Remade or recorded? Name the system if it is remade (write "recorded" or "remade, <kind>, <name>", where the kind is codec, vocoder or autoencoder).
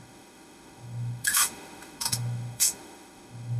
remade, autoencoder, DAC-VAE